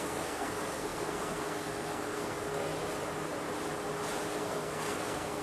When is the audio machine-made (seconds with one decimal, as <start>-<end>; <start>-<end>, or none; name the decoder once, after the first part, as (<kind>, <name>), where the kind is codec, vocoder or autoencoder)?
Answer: 0.0-2.7 (codec, SNAC); 4.3-5.4